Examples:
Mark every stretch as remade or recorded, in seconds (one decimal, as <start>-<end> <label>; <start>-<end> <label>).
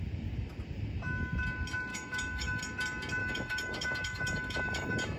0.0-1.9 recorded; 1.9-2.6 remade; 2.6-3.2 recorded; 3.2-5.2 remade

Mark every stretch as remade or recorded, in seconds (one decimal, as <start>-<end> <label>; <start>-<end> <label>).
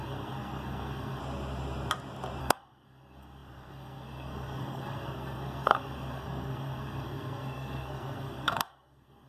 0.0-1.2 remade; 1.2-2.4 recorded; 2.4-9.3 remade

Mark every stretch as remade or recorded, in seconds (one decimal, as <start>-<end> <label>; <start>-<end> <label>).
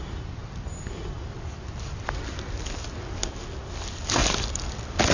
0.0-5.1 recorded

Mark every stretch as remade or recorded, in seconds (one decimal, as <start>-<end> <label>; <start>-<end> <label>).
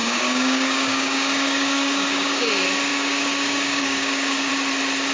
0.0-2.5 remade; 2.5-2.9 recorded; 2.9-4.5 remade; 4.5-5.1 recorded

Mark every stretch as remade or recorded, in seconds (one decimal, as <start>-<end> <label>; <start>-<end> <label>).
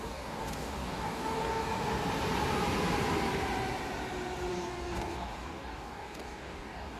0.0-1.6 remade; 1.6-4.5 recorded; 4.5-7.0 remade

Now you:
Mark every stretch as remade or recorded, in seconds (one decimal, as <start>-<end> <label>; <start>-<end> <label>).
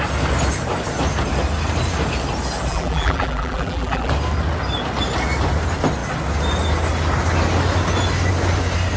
0.0-2.7 recorded; 2.7-4.1 remade; 4.1-9.0 recorded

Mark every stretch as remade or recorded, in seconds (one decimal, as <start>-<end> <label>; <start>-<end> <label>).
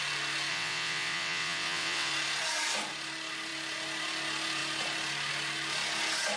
0.0-0.5 recorded; 0.5-2.1 remade; 2.1-6.4 recorded